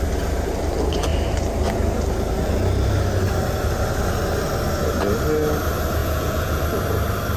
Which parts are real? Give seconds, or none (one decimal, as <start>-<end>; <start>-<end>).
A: 0.0-6.0; 6.6-7.4